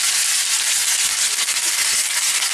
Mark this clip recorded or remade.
recorded